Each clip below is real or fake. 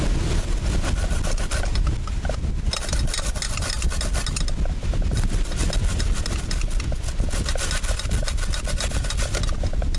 real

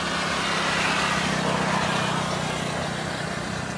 real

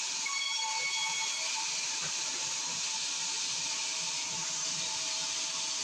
real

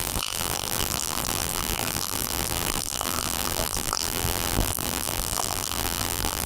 fake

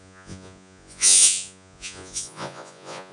fake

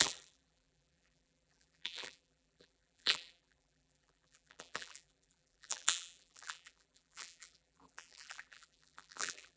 fake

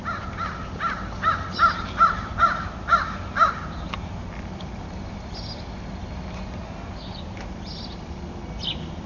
real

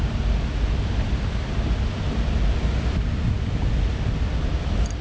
real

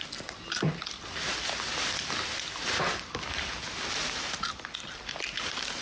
real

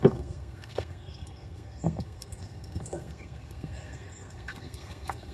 fake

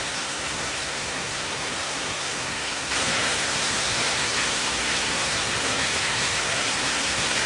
fake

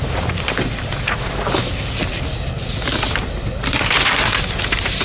real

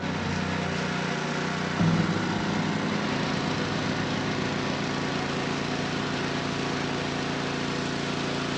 real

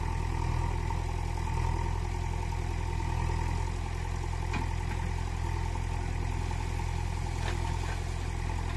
real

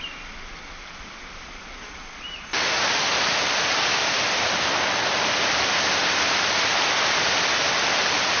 real